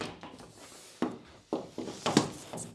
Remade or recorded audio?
recorded